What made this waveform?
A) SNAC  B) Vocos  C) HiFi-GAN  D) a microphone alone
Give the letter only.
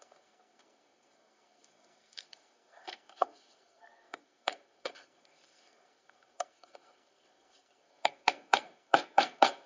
A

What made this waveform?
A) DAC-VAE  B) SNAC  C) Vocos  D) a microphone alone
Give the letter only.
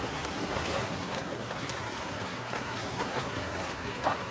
B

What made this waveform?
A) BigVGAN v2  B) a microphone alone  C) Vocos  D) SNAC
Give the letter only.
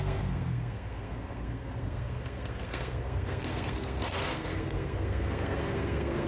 D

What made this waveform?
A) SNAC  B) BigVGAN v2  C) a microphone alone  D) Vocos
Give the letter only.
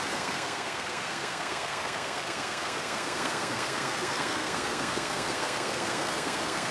A